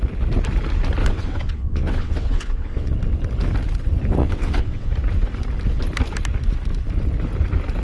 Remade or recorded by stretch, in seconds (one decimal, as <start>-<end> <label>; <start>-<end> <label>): 0.0-1.0 recorded; 1.0-2.9 remade; 2.9-4.2 recorded; 4.2-4.9 remade; 4.9-7.8 recorded